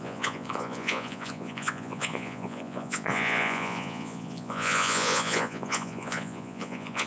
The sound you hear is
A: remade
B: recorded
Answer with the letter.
A